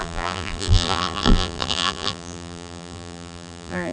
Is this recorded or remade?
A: remade